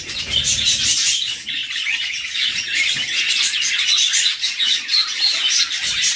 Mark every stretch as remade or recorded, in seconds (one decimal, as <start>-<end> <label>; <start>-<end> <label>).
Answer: 0.0-6.2 recorded